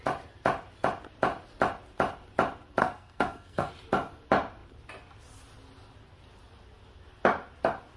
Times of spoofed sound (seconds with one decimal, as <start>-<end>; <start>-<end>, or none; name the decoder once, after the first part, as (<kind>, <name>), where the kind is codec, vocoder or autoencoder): 2.8-3.7 (codec, SNAC)